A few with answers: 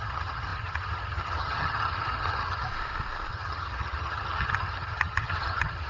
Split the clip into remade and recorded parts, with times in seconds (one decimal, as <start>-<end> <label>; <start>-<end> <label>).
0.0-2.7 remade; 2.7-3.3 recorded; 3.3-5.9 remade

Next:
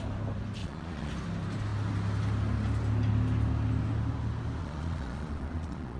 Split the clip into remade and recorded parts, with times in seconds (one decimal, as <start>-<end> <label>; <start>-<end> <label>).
0.0-0.6 recorded; 0.6-1.1 remade; 1.1-4.6 recorded; 4.6-6.0 remade

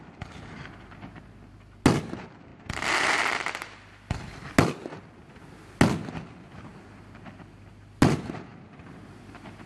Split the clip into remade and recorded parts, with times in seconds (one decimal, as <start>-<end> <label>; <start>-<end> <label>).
0.0-2.5 recorded; 2.5-4.2 remade; 4.2-6.7 recorded; 6.7-7.7 remade; 7.7-8.5 recorded; 8.5-9.2 remade; 9.2-9.7 recorded

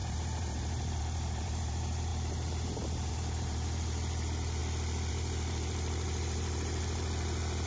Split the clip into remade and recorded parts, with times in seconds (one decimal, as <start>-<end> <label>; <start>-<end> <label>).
0.0-4.6 remade; 4.6-5.1 recorded; 5.1-7.7 remade

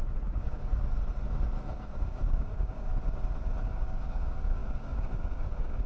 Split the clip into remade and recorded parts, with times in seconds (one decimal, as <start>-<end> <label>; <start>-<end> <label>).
0.0-0.7 remade; 0.7-1.7 recorded; 1.7-2.9 remade; 2.9-3.6 recorded; 3.6-5.9 remade